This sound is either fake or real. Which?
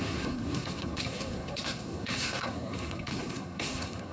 fake